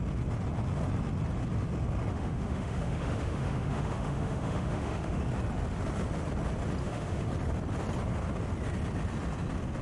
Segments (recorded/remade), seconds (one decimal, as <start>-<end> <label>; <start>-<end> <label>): 0.0-2.1 recorded; 2.1-5.2 remade; 5.2-6.8 recorded; 6.8-7.3 remade; 7.3-9.8 recorded